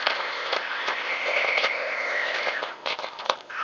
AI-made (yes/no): yes